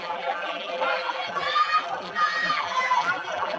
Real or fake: fake